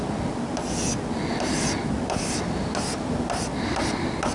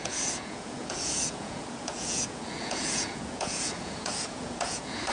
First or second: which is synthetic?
second